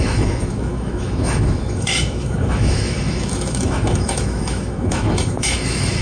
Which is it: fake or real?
fake